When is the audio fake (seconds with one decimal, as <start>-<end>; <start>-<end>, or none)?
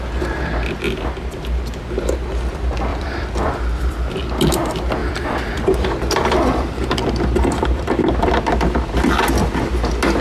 2.9-4.2; 5.0-8.3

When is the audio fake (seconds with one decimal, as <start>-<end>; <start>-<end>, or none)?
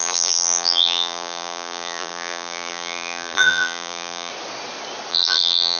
0.0-4.3; 5.1-5.8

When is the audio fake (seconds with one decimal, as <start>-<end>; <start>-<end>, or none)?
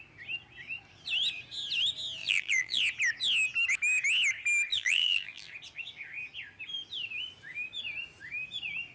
2.2-2.8; 4.7-5.5